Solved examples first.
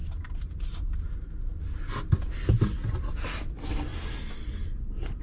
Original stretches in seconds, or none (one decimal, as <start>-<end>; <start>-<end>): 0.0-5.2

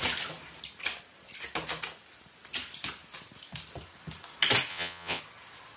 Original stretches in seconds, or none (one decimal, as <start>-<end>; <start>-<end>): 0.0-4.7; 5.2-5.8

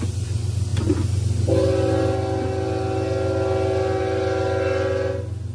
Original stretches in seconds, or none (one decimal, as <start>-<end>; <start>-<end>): 0.0-5.5

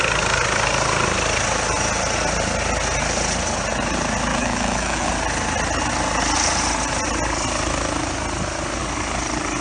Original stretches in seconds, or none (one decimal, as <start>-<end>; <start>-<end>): 0.0-4.3; 5.1-9.6

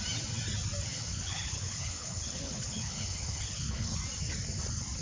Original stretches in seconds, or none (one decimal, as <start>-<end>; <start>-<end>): 0.0-0.9; 3.9-5.0

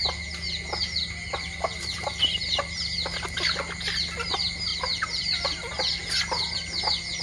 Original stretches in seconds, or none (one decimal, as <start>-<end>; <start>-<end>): 0.0-7.2

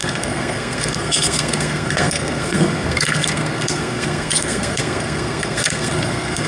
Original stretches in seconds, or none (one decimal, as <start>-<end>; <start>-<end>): none